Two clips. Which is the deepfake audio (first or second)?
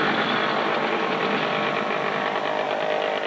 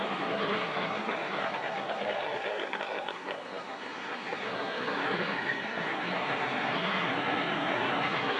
second